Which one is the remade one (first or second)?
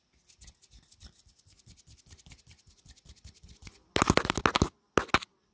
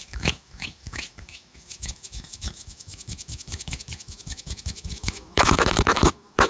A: second